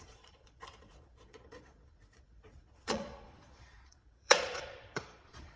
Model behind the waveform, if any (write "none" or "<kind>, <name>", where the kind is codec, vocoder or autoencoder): vocoder, Vocos